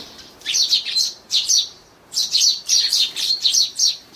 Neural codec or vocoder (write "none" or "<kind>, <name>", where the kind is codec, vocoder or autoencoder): vocoder, BigVGAN v2